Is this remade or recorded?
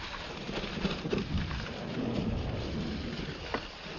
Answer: remade